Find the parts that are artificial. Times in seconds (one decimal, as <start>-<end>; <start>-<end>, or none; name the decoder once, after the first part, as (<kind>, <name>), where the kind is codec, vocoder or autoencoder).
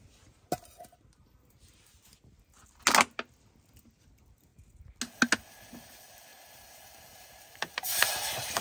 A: 6.3-8.6 (vocoder, BigVGAN v2)